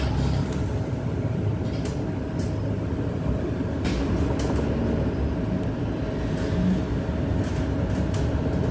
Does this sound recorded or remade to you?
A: recorded